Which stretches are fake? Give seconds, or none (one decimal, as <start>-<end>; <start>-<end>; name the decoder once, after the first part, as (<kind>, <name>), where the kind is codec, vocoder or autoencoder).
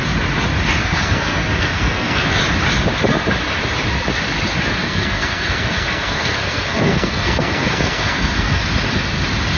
0.8-2.4 (codec, SNAC); 4.8-8.6